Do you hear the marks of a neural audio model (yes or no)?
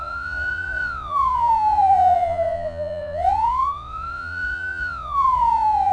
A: yes